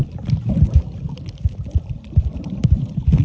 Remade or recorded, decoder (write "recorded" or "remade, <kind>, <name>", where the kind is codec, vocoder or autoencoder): remade, vocoder, BigVGAN v2